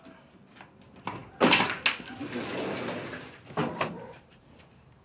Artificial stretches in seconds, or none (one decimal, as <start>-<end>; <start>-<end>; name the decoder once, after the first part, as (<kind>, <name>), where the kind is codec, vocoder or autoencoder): 3.6-4.5 (vocoder, BigVGAN v2)